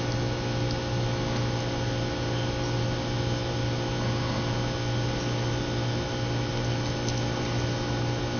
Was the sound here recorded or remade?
recorded